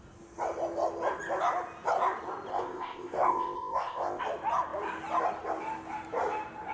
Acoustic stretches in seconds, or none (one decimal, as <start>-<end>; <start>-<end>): 0.0-2.5; 4.2-6.7